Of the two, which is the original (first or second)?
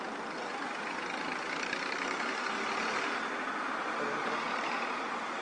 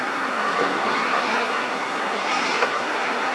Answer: first